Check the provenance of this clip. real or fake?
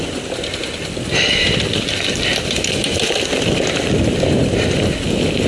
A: real